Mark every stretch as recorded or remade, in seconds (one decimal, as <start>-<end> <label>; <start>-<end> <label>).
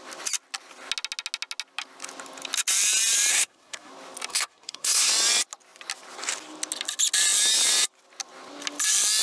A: 0.0-3.3 recorded; 3.3-3.9 remade; 3.9-4.3 recorded; 4.3-5.1 remade; 5.1-9.2 recorded